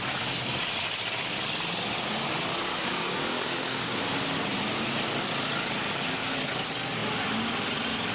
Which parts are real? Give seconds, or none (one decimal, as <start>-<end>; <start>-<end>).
0.0-2.5; 4.0-8.1